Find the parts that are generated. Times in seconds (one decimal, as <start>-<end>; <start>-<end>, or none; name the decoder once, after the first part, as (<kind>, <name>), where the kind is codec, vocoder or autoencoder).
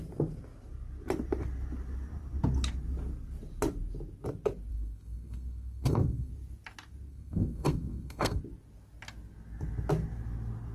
4.7-6.3 (codec, SNAC); 7.1-8.4